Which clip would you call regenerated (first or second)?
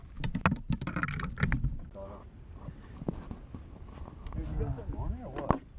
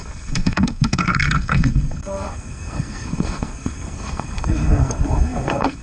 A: second